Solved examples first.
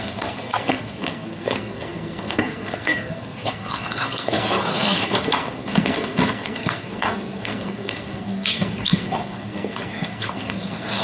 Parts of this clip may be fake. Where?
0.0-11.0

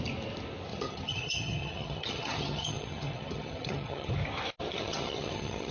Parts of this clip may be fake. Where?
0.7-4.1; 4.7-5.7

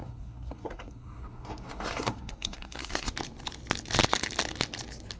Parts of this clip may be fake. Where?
0.0-3.1

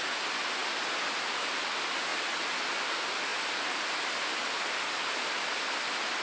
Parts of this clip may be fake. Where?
none

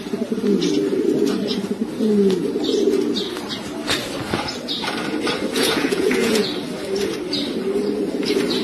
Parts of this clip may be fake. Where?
5.5-6.5